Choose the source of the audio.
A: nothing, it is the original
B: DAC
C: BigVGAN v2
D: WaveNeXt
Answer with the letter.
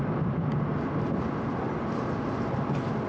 A